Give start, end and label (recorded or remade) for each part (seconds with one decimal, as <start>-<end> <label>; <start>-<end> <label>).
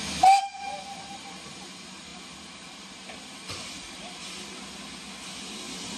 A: 0.0-6.0 recorded